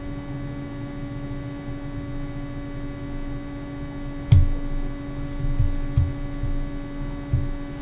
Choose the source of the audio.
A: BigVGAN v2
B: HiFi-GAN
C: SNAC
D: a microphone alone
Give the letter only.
D